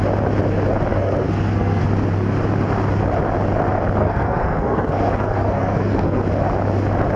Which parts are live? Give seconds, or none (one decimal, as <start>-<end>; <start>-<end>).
0.0-0.9; 1.8-4.0; 6.2-7.2